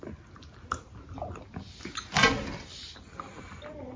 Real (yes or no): yes